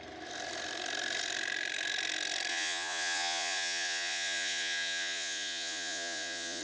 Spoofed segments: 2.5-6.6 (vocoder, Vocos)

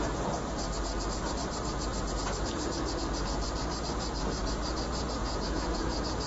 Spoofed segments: 5.2-6.3 (vocoder, Vocos)

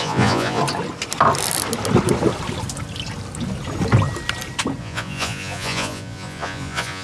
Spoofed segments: 0.0-0.6 (vocoder, Vocos); 4.8-7.0

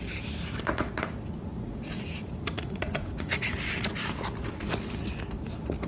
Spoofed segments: 1.5-3.5 (vocoder, Vocos)